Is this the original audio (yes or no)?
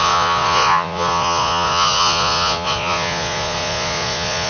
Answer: no